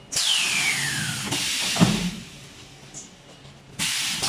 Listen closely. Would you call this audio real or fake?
real